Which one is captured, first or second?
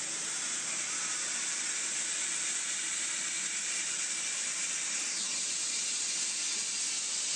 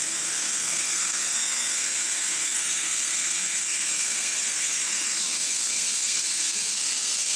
first